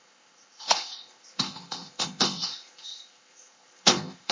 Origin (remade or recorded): remade